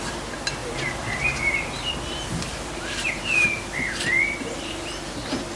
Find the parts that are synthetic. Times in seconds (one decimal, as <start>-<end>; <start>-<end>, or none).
0.6-1.9; 2.5-3.5